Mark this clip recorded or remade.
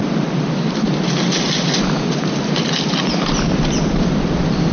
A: remade